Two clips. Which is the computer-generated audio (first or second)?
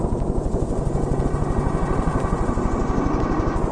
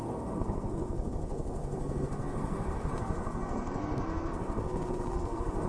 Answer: second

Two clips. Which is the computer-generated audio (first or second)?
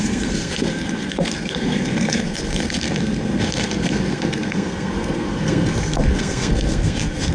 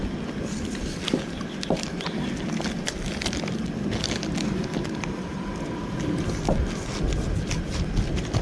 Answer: first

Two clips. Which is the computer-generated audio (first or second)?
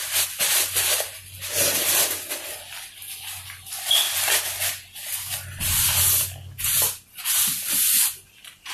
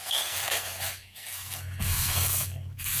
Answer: second